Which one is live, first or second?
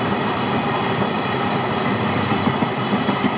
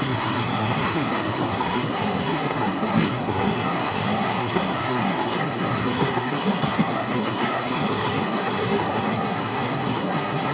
first